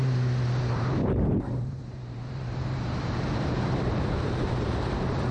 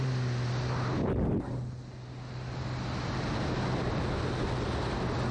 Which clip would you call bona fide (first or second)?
second